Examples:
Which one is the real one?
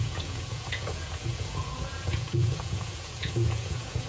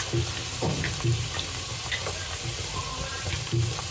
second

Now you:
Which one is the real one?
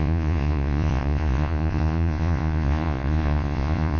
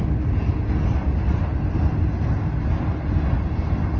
second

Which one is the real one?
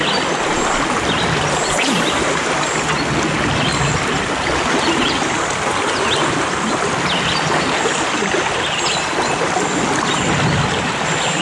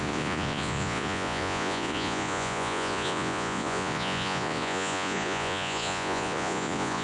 first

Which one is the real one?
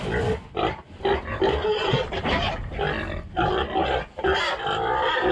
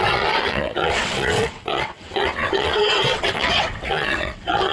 first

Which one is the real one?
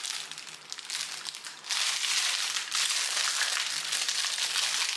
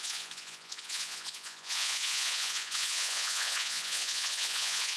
first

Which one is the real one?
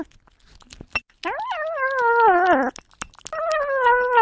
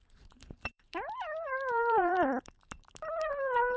first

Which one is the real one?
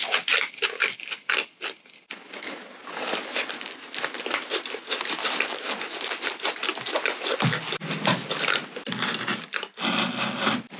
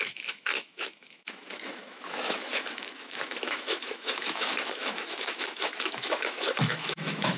first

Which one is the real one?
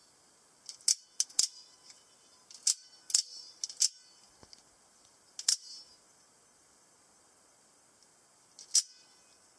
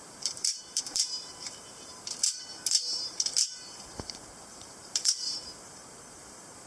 first